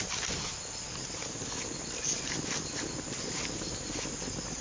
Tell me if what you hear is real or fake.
real